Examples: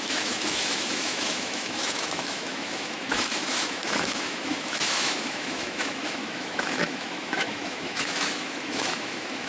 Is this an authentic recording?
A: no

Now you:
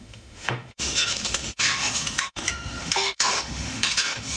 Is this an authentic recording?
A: no